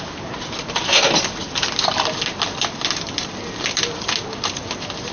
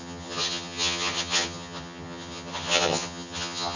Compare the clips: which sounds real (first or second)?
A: first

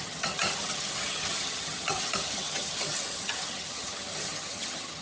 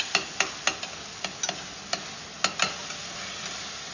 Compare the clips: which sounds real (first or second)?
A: second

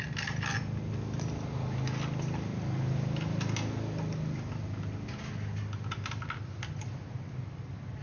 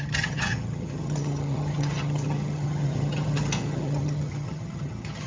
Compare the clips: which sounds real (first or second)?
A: first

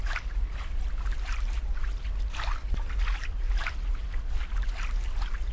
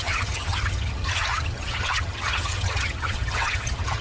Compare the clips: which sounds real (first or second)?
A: first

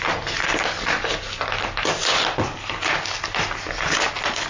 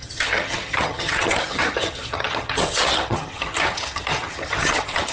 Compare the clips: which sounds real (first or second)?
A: first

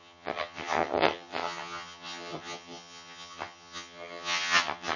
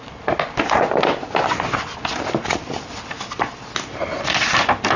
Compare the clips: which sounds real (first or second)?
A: second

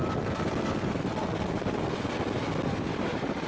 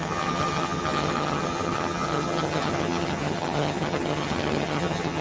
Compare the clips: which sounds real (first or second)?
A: first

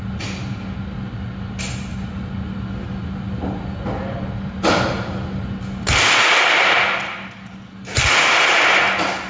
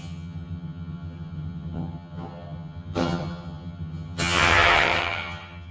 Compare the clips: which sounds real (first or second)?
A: first